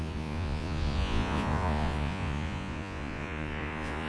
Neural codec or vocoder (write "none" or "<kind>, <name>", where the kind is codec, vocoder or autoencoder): vocoder, Vocos